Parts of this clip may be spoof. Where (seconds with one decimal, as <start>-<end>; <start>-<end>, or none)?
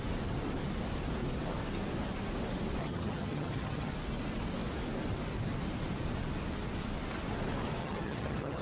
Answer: 2.8-3.9; 7.8-8.6